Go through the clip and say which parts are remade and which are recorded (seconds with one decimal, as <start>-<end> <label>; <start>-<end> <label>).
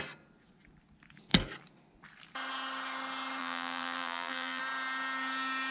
0.0-3.4 recorded; 3.4-4.6 remade; 4.6-5.7 recorded